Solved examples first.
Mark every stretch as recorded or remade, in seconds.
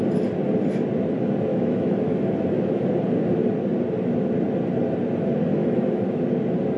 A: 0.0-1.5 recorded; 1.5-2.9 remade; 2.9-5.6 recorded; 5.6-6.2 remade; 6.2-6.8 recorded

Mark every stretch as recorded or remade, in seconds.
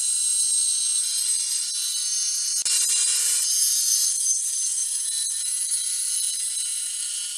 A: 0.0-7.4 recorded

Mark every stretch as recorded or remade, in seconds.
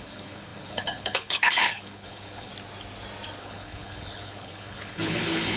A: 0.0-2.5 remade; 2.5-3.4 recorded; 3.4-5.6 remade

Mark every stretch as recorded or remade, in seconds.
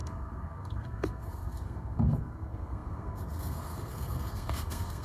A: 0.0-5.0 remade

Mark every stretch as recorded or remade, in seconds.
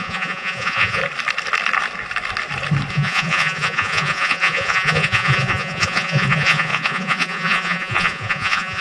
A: 0.0-1.0 remade; 1.0-2.9 recorded; 2.9-8.8 remade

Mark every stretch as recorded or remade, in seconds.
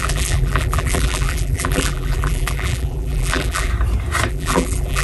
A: 0.0-3.7 remade; 3.7-4.3 recorded; 4.3-5.0 remade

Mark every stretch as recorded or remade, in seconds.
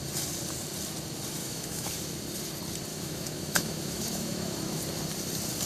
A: 0.0-1.4 recorded; 1.4-1.9 remade; 1.9-2.9 recorded; 2.9-4.8 remade; 4.8-5.7 recorded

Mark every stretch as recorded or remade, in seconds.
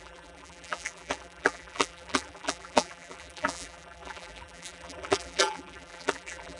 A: 0.0-6.6 remade